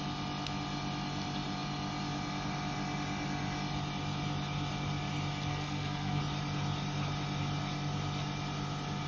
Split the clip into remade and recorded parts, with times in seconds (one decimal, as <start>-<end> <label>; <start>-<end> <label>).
0.0-5.5 recorded; 5.5-6.2 remade; 6.2-9.1 recorded